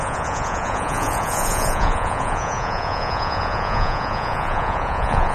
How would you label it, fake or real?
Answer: fake